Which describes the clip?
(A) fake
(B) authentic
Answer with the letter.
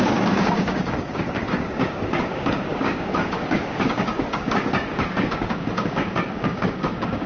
A